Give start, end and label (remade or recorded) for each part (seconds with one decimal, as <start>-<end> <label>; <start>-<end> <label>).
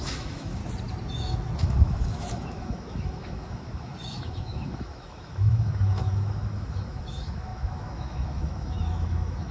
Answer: 0.0-0.6 remade; 0.6-1.6 recorded; 1.6-9.5 remade